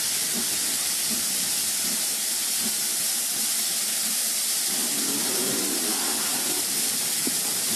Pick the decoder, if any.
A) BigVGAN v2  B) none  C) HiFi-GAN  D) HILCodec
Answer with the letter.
A